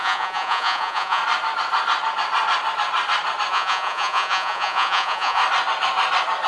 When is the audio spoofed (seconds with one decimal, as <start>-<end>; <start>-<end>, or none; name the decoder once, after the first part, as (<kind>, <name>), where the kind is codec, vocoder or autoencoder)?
0.0-1.2 (vocoder, Vocos); 3.5-5.4

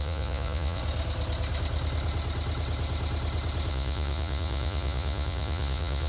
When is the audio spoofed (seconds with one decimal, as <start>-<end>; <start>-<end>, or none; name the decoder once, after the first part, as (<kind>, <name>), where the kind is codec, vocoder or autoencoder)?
0.0-0.8 (vocoder, Vocos); 3.7-6.1

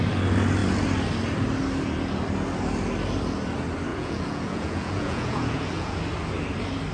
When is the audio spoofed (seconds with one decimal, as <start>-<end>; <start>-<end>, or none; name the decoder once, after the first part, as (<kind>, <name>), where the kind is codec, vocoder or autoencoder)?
3.9-6.0 (vocoder, Vocos)

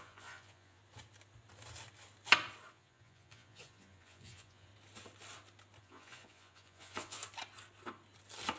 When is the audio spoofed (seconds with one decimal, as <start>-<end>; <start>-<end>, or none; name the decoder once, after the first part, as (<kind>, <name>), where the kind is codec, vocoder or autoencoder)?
0.0-0.8 (vocoder, Vocos); 2.7-4.7; 5.8-7.2

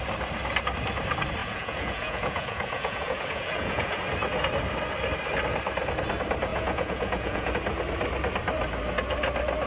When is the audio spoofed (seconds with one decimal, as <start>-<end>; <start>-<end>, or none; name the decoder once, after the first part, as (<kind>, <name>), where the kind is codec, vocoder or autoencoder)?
1.4-4.0 (vocoder, Vocos); 6.5-7.5

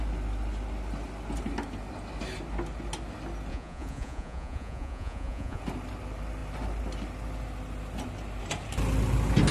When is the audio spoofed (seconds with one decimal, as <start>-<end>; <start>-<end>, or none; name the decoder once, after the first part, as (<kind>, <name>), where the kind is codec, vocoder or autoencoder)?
3.5-5.6 (vocoder, Vocos)

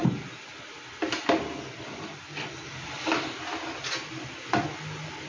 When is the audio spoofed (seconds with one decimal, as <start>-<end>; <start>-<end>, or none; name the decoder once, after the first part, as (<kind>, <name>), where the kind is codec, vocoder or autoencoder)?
none

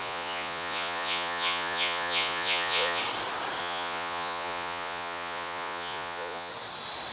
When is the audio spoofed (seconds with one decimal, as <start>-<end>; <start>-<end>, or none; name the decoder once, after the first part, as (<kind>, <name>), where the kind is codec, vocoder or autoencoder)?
0.0-3.0 (vocoder, Vocos); 3.6-6.5